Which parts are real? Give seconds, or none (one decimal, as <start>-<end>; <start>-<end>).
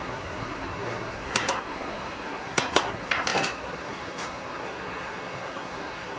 none